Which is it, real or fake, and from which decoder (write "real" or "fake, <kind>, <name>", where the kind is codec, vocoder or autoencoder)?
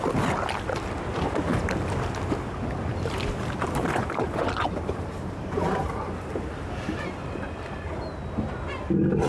real